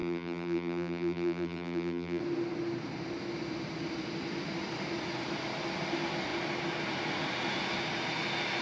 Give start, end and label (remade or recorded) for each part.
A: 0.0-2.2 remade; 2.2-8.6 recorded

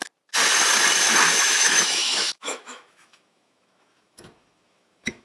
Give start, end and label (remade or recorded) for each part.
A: 0.0-1.4 recorded; 1.4-5.2 remade

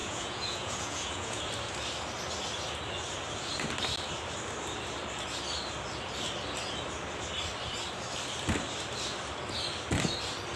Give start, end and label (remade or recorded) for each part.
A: 0.0-1.4 remade; 1.4-10.6 recorded

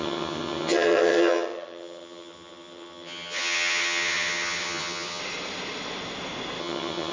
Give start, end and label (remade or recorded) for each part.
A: 0.0-5.2 remade; 5.2-6.6 recorded; 6.6-7.1 remade

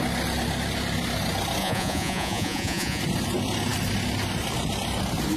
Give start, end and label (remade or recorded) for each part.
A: 0.0-1.6 recorded; 1.6-3.0 remade; 3.0-5.4 recorded

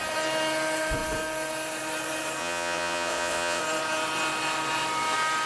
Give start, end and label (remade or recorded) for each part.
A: 0.0-2.4 recorded; 2.4-3.6 remade; 3.6-5.5 recorded

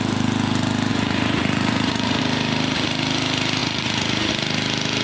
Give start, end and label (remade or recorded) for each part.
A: 0.0-0.9 recorded; 0.9-2.2 remade; 2.2-3.6 recorded; 3.6-4.3 remade; 4.3-5.0 recorded

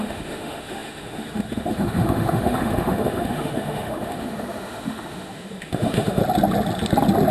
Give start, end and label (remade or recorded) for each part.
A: 0.0-6.2 remade; 6.2-7.3 recorded